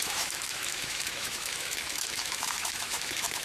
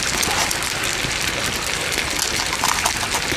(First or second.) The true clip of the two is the second